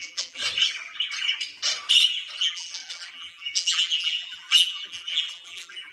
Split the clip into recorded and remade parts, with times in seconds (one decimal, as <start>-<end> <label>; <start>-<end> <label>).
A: 0.0-0.4 remade; 0.4-2.4 recorded; 2.4-5.9 remade